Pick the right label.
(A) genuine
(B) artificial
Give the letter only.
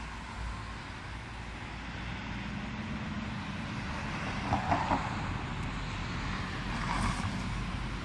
A